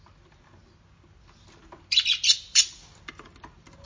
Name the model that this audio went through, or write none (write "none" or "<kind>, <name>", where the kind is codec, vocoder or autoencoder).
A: none